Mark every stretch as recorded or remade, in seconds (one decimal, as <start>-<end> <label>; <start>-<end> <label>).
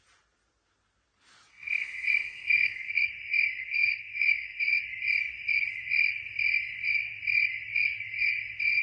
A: 0.0-1.5 recorded; 1.5-3.0 remade; 3.0-3.6 recorded; 3.6-4.6 remade; 4.6-8.8 recorded